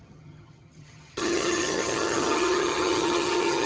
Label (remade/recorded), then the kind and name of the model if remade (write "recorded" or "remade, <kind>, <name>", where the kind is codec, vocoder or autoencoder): remade, vocoder, HiFi-GAN